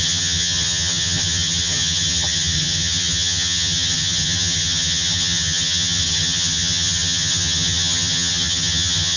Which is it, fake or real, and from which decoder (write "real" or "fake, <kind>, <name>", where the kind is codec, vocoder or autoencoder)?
fake, vocoder, HiFi-GAN